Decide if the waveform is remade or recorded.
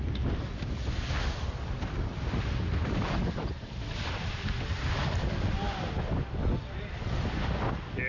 recorded